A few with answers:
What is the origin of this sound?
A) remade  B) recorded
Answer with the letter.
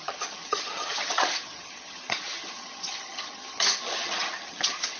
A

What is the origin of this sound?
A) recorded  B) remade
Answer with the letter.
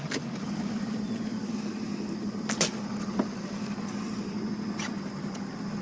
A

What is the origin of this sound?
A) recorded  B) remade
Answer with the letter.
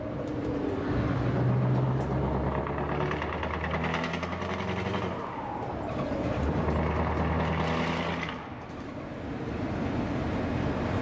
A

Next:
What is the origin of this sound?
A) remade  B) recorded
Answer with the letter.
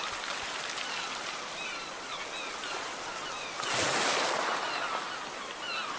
B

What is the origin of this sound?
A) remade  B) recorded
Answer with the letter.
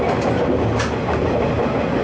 B